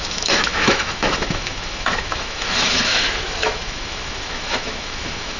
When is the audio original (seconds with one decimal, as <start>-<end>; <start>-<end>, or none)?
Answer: none